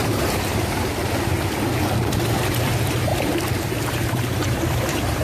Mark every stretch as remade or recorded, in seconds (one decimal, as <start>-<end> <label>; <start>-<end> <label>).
0.0-0.9 remade; 0.9-2.2 recorded; 2.2-3.1 remade; 3.1-3.8 recorded; 3.8-5.2 remade

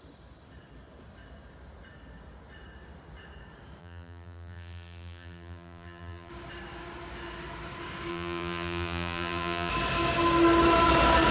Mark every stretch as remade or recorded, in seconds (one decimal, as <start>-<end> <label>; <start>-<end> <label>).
0.0-3.8 recorded; 3.8-6.3 remade; 6.3-8.1 recorded; 8.1-9.7 remade; 9.7-11.3 recorded